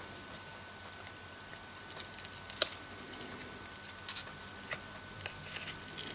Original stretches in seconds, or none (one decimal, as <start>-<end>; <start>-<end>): 0.0-6.1